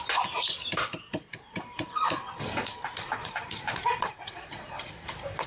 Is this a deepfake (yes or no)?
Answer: yes